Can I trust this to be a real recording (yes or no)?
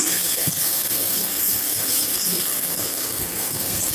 no